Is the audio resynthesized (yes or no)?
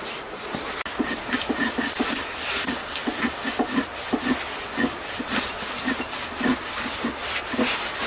no